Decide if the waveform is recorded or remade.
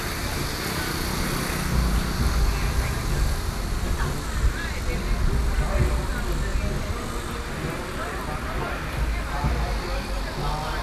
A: recorded